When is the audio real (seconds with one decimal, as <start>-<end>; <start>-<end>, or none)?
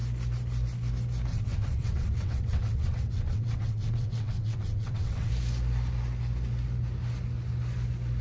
0.0-1.3; 5.3-8.2